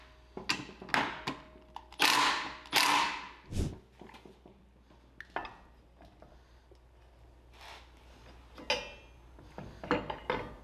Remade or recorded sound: recorded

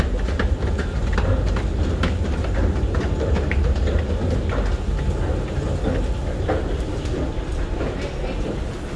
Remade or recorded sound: recorded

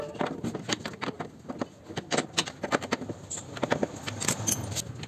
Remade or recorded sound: recorded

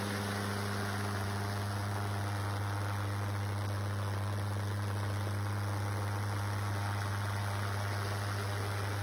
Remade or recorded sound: recorded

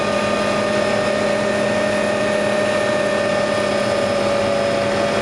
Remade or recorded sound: recorded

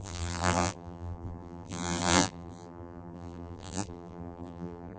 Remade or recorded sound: remade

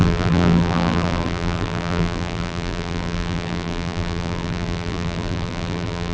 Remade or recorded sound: remade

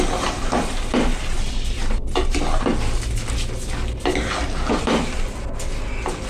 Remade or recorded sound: recorded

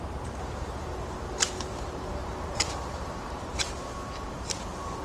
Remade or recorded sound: remade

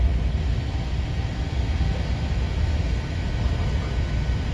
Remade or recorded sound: recorded